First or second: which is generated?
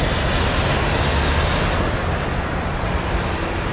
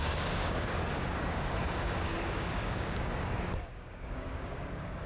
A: second